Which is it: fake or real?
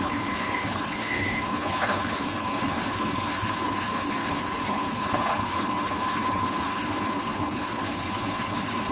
fake